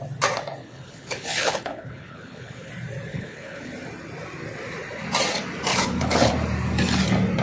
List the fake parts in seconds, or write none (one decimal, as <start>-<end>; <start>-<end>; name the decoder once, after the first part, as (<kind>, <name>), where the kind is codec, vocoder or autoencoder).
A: 0.6-2.7 (codec, HILCodec); 3.1-3.7; 5.7-6.3